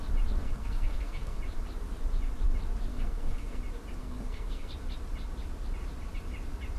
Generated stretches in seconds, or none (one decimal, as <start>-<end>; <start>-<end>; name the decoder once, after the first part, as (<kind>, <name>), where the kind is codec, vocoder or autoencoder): 0.4-1.4 (codec, SNAC); 2.9-3.6; 4.0-4.7

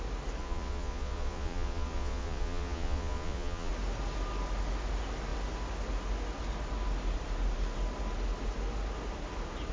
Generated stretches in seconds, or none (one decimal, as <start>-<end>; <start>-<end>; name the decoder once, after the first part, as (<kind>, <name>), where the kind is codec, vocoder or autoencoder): 0.4-3.7 (vocoder, Vocos)

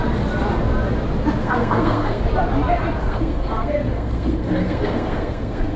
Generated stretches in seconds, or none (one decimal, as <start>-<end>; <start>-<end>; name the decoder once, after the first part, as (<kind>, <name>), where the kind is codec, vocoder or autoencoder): 1.4-2.2 (codec, SNAC); 3.0-5.8

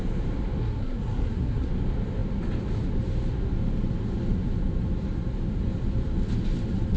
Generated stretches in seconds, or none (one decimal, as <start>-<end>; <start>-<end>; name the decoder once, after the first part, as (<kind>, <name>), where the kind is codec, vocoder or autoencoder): 0.6-1.7 (codec, SNAC)

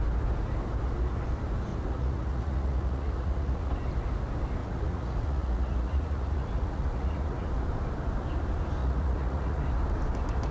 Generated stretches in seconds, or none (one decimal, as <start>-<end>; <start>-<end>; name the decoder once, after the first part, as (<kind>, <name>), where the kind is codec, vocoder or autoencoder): 1.7-3.7 (vocoder, Vocos); 4.6-7.5; 8.8-9.6